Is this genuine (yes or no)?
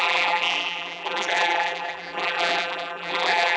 no